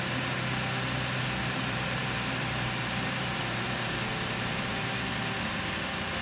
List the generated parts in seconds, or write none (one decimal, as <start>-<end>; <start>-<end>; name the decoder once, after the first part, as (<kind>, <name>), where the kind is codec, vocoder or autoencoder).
1.4-5.1 (vocoder, BigVGAN v2)